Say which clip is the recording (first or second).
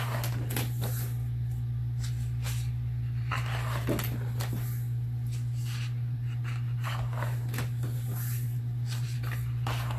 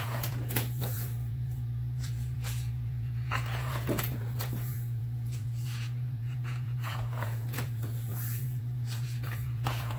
first